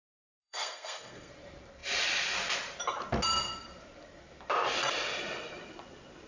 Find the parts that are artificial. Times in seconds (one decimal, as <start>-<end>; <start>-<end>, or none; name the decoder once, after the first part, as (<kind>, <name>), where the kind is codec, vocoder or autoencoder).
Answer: 0.4-1.3 (codec, SNAC)